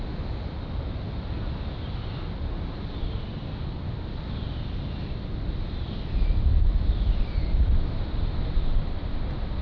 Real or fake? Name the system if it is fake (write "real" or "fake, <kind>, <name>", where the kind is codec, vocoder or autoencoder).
real